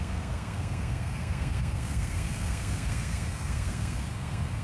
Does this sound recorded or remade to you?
remade